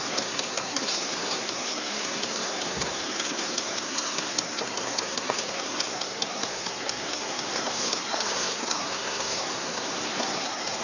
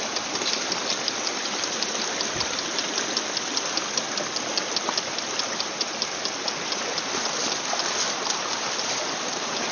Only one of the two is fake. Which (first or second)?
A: first